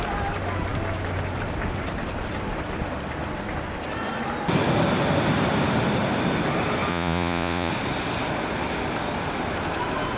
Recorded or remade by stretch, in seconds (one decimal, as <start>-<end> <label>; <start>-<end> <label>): 0.0-6.9 recorded; 6.9-7.7 remade; 7.7-10.2 recorded